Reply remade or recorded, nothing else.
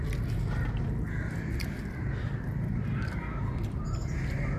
remade